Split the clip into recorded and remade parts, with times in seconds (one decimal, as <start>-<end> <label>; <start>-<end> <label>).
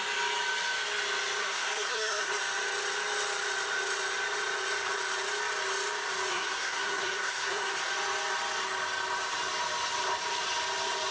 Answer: 0.0-1.4 recorded; 1.4-2.3 remade; 2.3-6.3 recorded; 6.3-7.9 remade; 7.9-11.1 recorded